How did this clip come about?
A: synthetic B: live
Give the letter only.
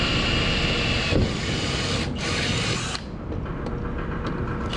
B